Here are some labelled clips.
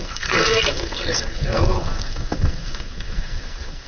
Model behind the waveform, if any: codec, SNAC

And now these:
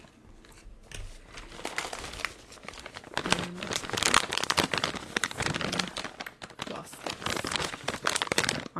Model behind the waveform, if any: none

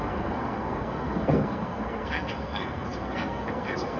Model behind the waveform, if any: codec, SNAC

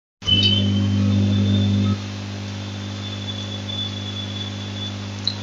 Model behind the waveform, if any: none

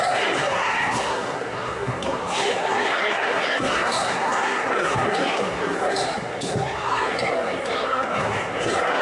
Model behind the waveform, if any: codec, SNAC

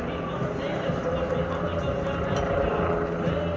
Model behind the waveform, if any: none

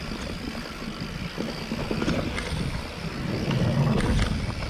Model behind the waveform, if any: none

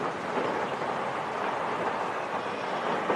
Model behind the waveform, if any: none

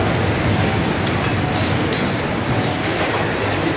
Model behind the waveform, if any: none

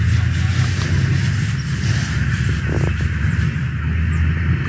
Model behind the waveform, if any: none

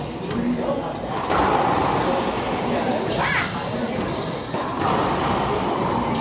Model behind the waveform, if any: none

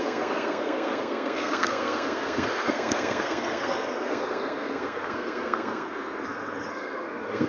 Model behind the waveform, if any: codec, SNAC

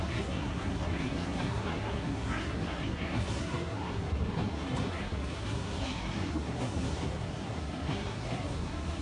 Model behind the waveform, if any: codec, SNAC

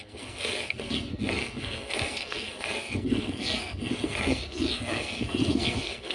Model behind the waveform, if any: codec, SNAC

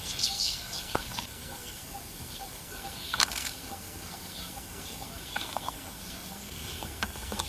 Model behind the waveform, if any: codec, SNAC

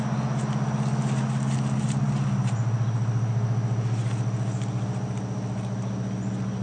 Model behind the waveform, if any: none